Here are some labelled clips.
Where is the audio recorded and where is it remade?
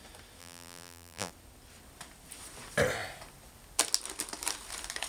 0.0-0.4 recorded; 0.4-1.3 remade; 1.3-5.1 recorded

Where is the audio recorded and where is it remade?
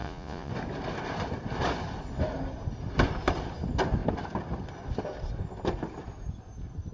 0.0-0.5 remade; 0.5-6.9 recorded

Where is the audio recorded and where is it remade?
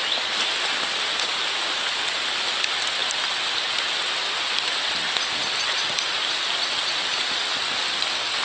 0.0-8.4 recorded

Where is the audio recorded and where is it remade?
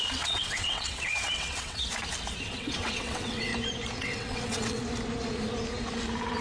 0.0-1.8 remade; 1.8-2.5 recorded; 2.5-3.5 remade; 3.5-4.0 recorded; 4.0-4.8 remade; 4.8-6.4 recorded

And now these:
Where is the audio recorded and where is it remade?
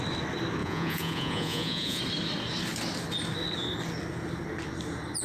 0.0-0.6 recorded; 0.6-2.0 remade; 2.0-5.2 recorded